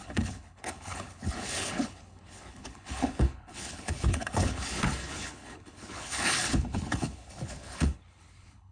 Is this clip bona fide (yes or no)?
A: no